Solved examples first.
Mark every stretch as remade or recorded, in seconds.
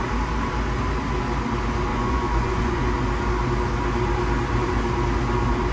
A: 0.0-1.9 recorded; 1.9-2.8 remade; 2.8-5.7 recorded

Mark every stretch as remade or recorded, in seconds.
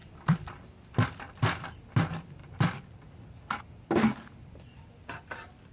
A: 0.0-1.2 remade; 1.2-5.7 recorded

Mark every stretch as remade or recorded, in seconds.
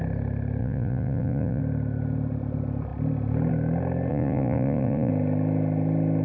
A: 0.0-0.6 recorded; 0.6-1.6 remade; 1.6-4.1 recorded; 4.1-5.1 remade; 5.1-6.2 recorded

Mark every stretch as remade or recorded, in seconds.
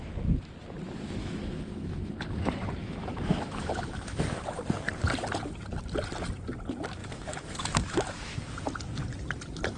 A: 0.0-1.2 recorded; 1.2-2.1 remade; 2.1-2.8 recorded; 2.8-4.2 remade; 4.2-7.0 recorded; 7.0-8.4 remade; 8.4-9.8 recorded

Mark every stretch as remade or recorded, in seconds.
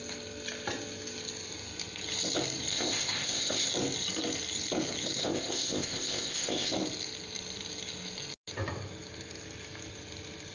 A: 0.0-2.7 recorded; 2.7-3.7 remade; 3.7-5.2 recorded; 5.2-6.7 remade; 6.7-10.5 recorded